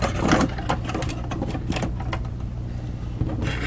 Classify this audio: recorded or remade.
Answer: recorded